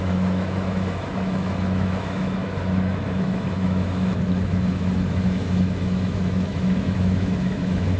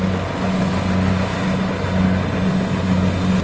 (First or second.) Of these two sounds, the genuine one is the second